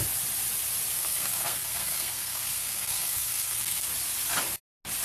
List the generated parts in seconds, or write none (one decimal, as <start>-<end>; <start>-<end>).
0.9-3.9